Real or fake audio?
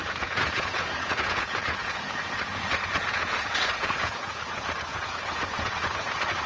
fake